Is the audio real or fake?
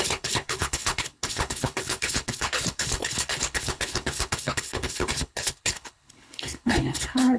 fake